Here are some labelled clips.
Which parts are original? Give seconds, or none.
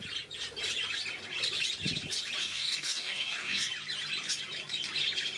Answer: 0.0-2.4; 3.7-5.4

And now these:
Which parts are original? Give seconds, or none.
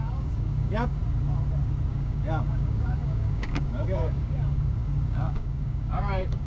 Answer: 1.0-1.9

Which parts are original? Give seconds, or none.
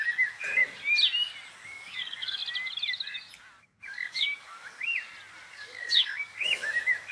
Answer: 0.6-1.5; 2.4-3.6; 4.9-5.5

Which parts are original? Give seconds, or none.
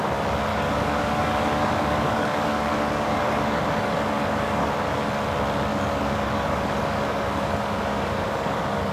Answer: 0.0-0.5; 5.1-5.7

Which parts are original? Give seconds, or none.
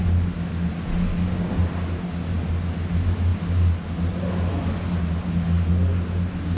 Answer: 0.0-1.1; 1.6-6.6